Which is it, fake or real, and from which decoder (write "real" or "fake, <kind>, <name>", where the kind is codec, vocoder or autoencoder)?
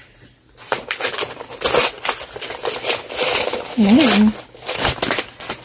real